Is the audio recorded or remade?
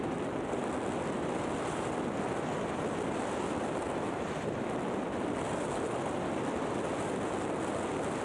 recorded